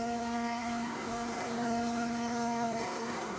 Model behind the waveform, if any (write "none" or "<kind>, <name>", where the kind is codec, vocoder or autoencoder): codec, SNAC